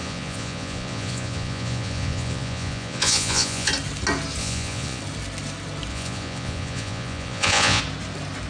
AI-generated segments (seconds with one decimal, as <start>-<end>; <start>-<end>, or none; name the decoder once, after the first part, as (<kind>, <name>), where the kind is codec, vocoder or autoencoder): 0.0-3.7 (vocoder, Vocos); 4.4-5.0; 5.9-7.8

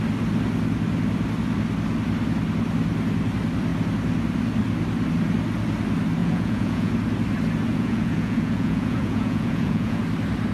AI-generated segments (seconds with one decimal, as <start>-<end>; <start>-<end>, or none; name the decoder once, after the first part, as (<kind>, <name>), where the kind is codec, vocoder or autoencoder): 6.2-6.9 (vocoder, Vocos); 7.7-10.0

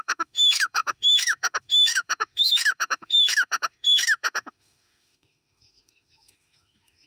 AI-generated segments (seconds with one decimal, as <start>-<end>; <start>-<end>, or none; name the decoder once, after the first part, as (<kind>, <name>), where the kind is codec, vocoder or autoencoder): 0.0-7.1 (autoencoder, DAC-VAE)

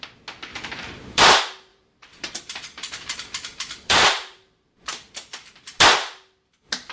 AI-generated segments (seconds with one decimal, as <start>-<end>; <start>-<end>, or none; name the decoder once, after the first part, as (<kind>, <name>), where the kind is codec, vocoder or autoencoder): 0.5-1.2 (vocoder, BigVGAN v2); 1.7-5.1

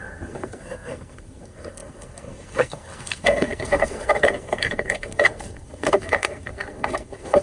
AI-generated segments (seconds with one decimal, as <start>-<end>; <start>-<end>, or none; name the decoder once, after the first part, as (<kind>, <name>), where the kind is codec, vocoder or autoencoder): 0.0-7.4 (codec, SNAC)